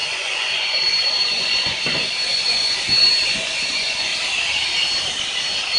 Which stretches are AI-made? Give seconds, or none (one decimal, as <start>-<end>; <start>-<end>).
0.0-4.1